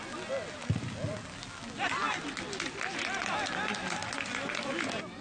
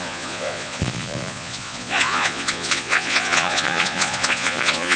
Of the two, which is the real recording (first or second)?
first